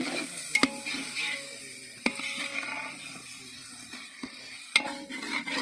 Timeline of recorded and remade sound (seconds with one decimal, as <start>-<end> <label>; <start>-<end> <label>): 0.0-1.0 recorded; 1.0-1.6 remade; 1.6-5.6 recorded